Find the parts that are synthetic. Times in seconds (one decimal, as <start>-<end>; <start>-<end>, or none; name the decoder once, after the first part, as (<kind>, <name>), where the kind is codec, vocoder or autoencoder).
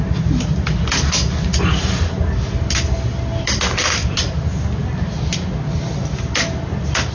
none